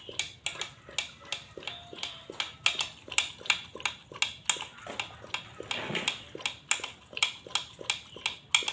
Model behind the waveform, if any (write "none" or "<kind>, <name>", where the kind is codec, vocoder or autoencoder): none